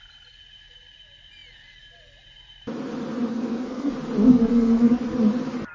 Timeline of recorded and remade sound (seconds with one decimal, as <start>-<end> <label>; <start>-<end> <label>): 0.0-3.3 recorded; 3.3-3.9 remade; 3.9-4.3 recorded; 4.3-5.0 remade; 5.0-5.7 recorded